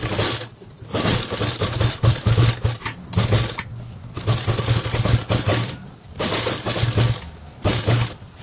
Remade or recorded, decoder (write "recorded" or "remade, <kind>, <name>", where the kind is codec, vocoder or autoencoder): recorded